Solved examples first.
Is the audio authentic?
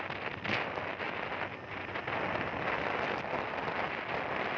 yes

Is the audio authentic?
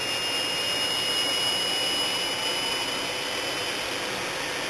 yes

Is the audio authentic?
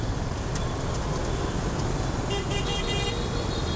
yes